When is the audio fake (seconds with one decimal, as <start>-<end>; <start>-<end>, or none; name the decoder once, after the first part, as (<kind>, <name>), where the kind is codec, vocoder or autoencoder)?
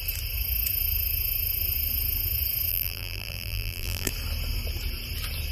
2.7-4.1 (vocoder, BigVGAN v2)